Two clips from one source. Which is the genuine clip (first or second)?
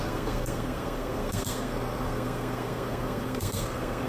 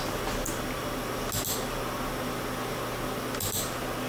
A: second